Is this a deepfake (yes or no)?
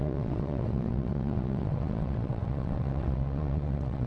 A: yes